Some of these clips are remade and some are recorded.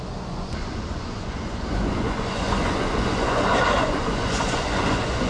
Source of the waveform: remade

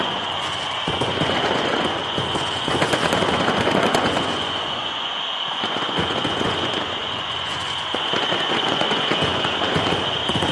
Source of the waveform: remade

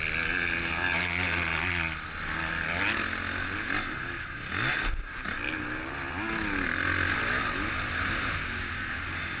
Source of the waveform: recorded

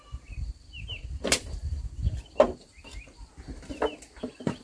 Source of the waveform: recorded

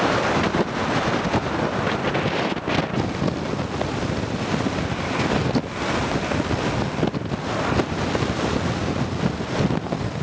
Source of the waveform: recorded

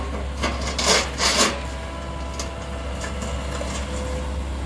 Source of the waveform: recorded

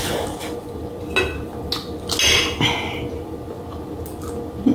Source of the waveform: recorded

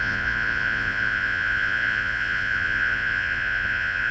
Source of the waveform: remade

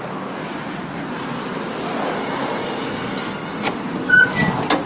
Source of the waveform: recorded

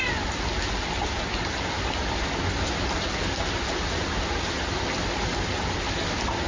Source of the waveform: recorded